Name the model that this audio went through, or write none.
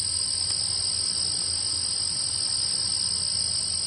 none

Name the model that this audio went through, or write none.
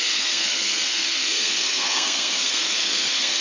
codec, SNAC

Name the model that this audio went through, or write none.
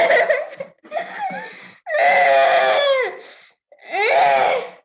none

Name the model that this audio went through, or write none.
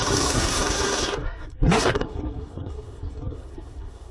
codec, SNAC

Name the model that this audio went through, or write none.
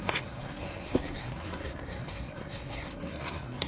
codec, SNAC